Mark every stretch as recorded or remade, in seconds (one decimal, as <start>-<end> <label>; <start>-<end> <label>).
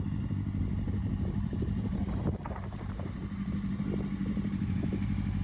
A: 0.0-0.6 recorded; 0.6-3.8 remade; 3.8-4.2 recorded; 4.2-4.9 remade; 4.9-5.4 recorded